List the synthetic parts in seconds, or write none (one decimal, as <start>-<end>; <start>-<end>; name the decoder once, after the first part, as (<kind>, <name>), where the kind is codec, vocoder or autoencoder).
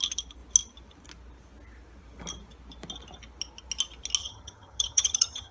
4.2-5.5 (vocoder, HiFi-GAN)